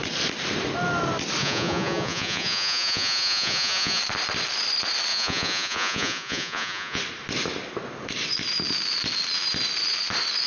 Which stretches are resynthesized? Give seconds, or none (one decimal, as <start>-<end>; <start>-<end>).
1.4-4.0; 5.1-7.0